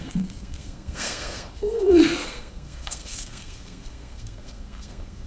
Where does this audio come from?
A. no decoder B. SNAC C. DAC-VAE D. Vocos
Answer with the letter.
B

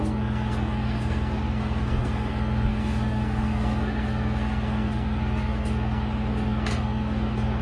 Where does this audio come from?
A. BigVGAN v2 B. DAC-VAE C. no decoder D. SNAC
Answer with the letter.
D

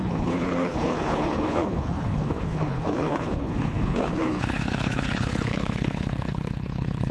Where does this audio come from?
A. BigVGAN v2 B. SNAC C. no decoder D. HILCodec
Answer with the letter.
D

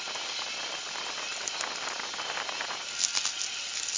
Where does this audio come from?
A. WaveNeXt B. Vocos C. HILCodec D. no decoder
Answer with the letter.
D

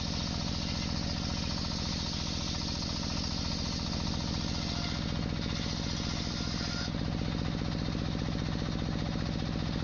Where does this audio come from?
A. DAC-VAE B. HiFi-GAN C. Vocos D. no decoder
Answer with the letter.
D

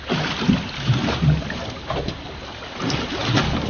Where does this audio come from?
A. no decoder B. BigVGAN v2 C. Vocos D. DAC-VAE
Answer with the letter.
A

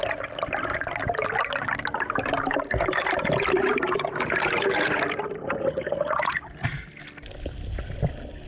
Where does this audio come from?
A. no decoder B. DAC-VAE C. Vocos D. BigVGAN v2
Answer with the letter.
A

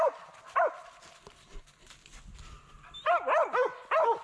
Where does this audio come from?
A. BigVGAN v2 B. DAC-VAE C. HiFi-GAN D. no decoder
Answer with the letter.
D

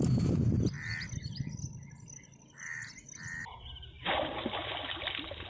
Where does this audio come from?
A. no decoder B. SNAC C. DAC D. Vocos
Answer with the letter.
A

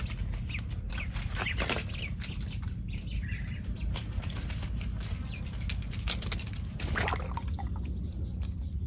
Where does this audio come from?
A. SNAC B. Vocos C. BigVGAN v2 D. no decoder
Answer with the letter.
D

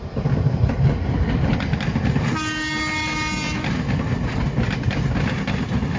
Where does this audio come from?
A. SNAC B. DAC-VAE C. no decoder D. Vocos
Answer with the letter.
C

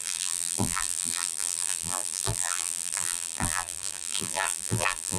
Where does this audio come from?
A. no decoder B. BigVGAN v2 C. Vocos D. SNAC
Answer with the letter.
B